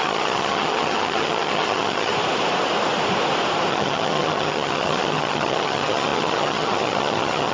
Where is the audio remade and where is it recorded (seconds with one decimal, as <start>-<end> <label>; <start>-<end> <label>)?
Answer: 0.0-2.1 remade; 2.1-3.7 recorded; 3.7-7.5 remade